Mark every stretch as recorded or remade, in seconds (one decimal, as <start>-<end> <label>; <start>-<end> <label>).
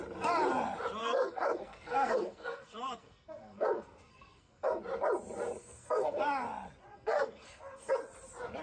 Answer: 0.0-1.0 recorded; 1.0-4.8 remade; 4.8-5.6 recorded; 5.6-6.2 remade; 6.2-6.9 recorded; 6.9-7.9 remade; 7.9-8.6 recorded